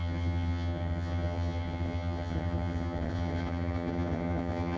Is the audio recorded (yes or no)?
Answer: no